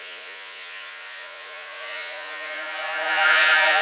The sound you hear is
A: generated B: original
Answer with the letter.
A